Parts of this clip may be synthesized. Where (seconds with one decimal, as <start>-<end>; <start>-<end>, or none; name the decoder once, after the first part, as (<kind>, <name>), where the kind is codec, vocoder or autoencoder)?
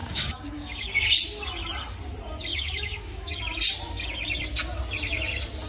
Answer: 0.0-1.1 (codec, DAC); 2.5-3.4